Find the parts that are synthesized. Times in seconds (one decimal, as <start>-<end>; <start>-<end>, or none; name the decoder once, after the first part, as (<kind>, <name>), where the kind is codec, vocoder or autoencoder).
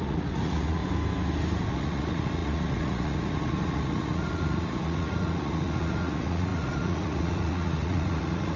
0.0-0.8 (vocoder, Vocos); 1.7-8.6